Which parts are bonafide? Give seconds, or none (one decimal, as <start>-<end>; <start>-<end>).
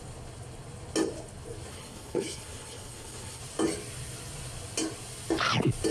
0.0-1.7; 3.4-5.9